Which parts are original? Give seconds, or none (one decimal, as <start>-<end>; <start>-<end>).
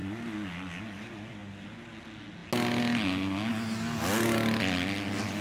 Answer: 0.0-5.4